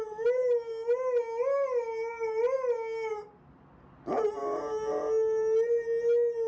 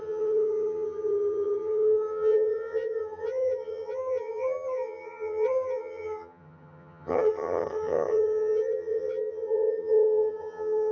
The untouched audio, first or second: first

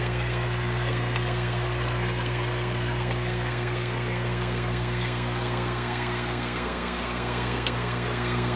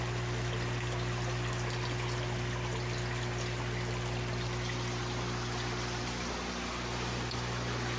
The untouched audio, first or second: second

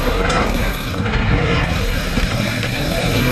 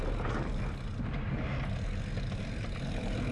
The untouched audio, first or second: second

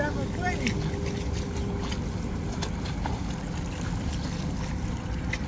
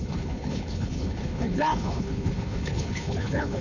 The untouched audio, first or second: first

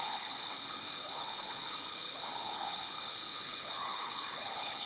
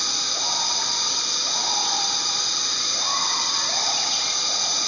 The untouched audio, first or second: second